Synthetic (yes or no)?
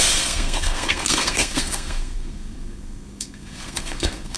yes